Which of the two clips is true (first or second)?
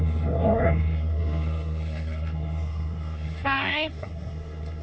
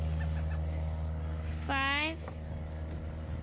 second